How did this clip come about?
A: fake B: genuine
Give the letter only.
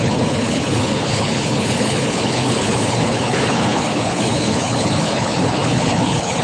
A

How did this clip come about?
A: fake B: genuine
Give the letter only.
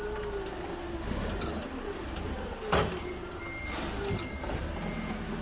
B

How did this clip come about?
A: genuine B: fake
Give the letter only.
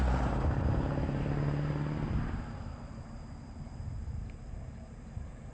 B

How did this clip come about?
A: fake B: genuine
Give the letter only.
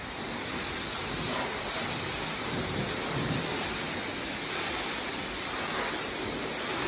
B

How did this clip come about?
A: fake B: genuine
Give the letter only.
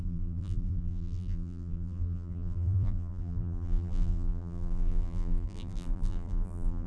A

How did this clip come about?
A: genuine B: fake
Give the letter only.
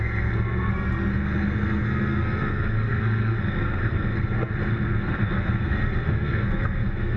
B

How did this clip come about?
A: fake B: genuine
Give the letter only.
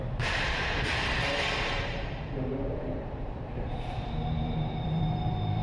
A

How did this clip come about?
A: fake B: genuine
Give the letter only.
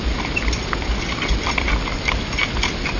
B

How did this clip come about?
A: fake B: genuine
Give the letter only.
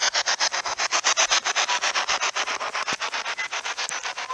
B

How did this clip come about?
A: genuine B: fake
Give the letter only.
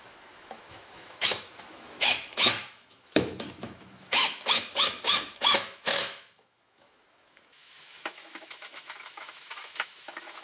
B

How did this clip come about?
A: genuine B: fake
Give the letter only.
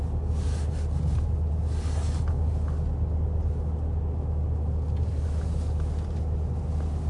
A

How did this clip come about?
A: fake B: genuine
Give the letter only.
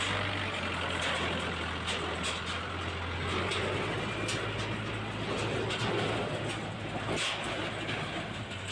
B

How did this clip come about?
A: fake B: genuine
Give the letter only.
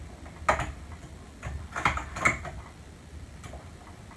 B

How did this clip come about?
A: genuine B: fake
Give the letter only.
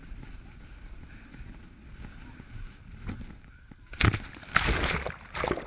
A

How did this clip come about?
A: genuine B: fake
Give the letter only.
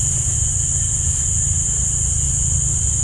A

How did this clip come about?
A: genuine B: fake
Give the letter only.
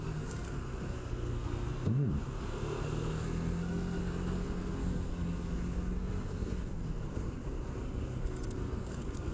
B